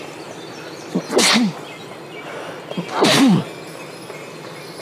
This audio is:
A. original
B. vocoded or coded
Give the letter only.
A